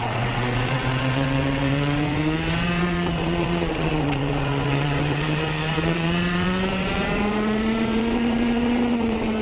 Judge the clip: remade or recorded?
remade